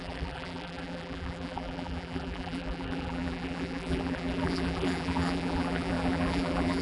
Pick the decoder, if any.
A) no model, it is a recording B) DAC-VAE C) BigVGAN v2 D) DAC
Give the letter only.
C